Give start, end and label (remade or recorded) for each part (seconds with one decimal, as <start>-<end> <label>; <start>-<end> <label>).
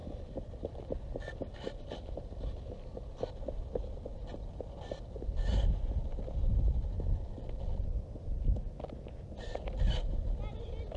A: 0.0-11.0 recorded